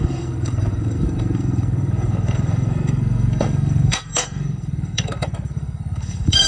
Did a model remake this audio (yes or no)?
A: yes